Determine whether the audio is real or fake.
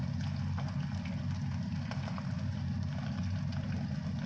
real